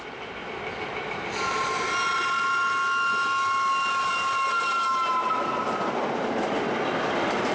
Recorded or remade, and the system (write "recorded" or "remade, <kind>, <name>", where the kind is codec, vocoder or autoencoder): recorded